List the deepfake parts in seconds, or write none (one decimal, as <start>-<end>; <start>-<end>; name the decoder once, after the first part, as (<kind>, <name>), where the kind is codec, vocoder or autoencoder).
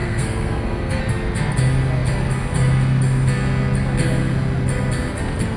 0.0-1.0 (codec, SNAC)